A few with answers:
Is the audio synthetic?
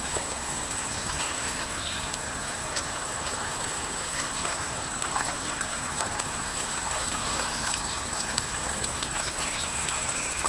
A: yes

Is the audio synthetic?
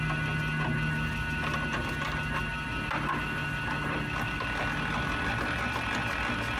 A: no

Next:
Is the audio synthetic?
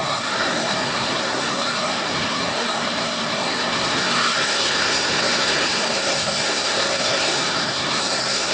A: yes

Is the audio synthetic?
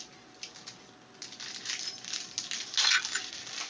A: no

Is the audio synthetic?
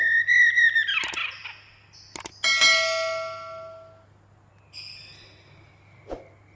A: no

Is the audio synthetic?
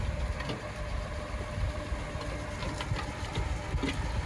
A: no